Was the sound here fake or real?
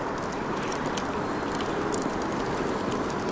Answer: real